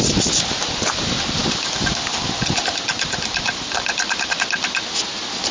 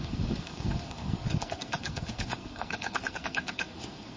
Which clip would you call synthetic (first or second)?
second